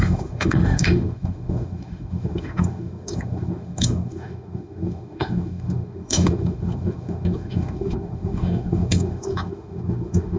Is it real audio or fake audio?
fake